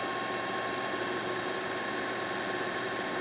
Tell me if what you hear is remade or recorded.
recorded